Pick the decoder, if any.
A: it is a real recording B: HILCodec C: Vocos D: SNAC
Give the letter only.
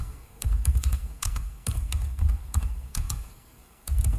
D